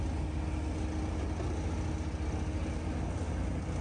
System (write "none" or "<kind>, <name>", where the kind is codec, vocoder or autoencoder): none